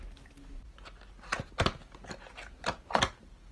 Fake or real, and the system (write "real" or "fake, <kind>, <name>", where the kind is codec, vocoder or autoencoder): real